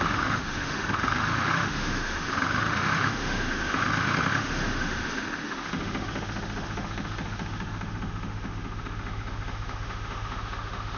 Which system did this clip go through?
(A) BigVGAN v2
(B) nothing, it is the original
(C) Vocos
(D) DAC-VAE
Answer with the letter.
D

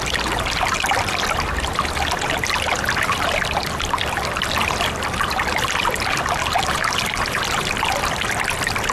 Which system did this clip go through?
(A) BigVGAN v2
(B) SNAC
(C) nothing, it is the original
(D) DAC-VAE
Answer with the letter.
C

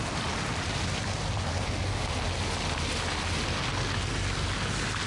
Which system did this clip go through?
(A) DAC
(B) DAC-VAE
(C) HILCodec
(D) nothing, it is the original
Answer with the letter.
D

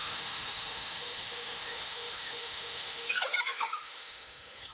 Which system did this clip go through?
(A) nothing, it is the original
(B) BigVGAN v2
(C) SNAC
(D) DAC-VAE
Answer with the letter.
D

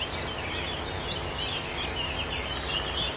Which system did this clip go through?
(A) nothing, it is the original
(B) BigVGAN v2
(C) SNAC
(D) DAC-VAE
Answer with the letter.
A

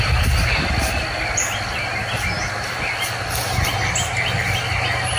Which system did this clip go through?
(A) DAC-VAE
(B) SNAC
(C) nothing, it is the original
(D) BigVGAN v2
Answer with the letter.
C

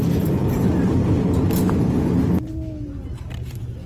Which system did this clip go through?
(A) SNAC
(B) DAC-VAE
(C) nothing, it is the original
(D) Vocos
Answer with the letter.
C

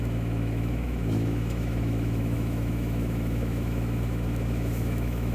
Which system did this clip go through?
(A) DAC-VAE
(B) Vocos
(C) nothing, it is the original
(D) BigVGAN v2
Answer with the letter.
A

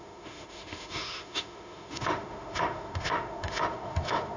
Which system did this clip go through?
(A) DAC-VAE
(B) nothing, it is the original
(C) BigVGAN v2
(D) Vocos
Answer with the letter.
A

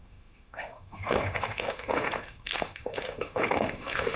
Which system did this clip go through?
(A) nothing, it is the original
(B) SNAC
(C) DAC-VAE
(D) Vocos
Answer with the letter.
C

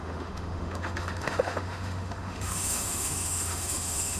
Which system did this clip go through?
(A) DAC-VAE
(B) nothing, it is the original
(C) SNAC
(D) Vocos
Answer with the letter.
A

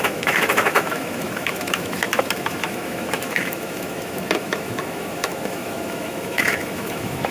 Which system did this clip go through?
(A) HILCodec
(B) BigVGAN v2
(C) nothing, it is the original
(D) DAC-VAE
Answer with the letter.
D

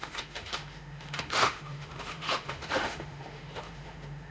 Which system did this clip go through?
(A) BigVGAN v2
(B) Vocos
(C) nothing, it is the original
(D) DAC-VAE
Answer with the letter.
D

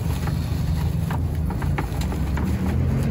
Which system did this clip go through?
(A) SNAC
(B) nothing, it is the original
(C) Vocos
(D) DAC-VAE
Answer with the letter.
B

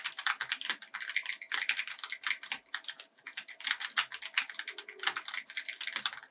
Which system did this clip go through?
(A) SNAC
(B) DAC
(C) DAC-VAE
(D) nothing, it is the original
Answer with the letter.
D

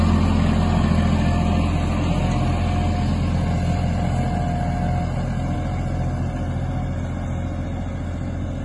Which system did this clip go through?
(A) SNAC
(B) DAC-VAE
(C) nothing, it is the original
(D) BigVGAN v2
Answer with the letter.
C